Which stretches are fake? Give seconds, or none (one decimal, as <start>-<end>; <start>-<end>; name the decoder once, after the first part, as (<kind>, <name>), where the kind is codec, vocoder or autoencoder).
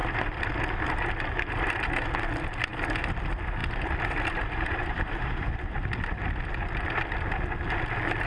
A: 0.0-0.8 (vocoder, BigVGAN v2); 3.6-6.0